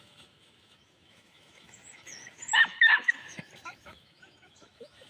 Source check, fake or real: fake